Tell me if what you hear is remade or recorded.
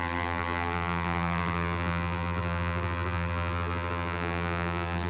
remade